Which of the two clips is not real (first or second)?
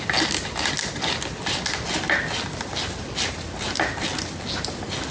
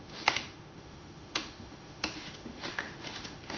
second